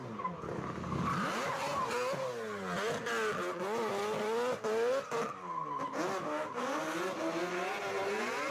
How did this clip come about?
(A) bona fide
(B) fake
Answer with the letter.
A